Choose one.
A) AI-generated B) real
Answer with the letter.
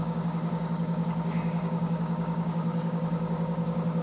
A